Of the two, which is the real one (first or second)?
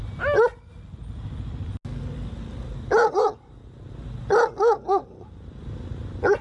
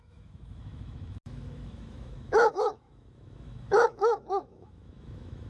first